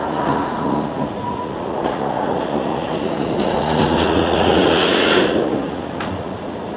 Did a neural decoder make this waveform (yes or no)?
yes